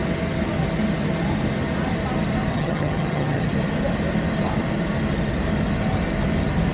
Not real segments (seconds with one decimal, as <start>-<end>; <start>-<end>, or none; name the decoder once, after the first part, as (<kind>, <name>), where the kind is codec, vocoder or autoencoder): 2.5-3.5 (vocoder, HiFi-GAN)